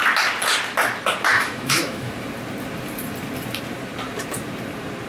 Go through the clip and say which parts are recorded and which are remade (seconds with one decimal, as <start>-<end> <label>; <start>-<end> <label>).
0.0-1.3 recorded; 1.3-2.1 remade; 2.1-5.1 recorded